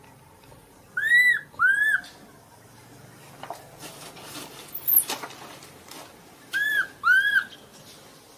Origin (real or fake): real